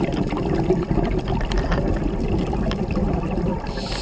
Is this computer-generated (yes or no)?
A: no